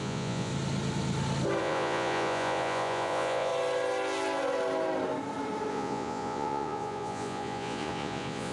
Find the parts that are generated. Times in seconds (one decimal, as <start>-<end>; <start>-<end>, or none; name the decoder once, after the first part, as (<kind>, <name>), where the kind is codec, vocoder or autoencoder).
0.0-0.5 (vocoder, Vocos); 1.6-3.5; 5.7-8.5